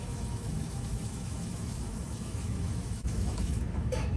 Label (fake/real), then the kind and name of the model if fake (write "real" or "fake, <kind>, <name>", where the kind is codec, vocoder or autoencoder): fake, autoencoder, DAC-VAE